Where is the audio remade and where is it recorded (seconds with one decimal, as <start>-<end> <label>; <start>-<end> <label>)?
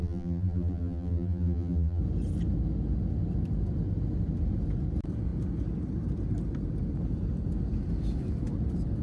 0.0-2.0 remade; 2.0-9.0 recorded